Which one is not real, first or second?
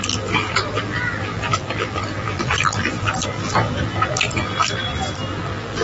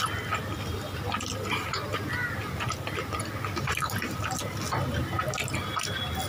first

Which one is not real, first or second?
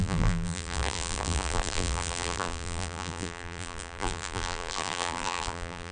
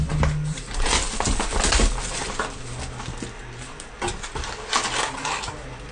first